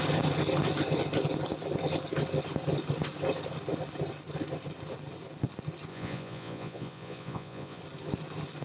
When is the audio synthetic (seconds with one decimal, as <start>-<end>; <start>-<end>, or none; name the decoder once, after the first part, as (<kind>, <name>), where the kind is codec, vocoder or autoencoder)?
5.9-7.8 (vocoder, Vocos)